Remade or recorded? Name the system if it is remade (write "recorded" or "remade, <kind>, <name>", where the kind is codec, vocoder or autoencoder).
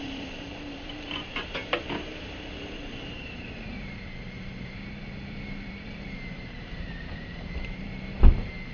remade, vocoder, BigVGAN v2